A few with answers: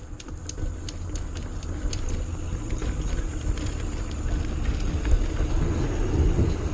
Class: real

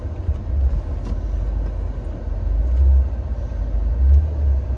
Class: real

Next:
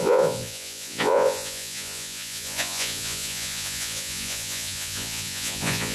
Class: fake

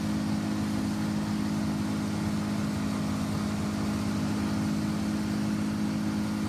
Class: real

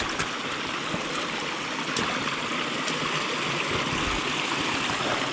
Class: real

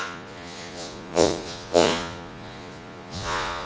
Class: fake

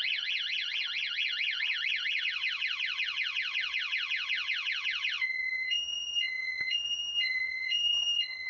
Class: fake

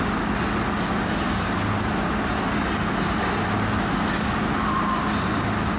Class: real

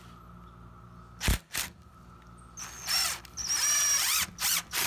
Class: real